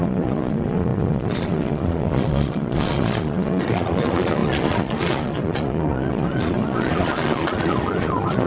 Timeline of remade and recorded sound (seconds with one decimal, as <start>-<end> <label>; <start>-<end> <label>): 0.0-8.5 remade